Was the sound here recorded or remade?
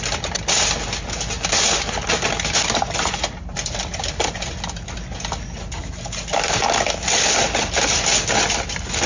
recorded